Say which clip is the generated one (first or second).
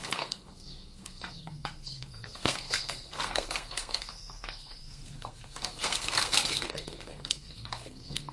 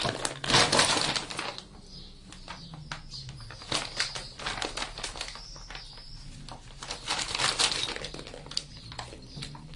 first